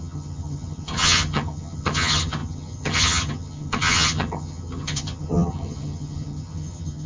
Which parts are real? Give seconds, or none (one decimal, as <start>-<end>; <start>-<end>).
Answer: none